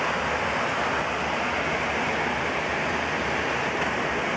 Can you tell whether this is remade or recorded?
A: recorded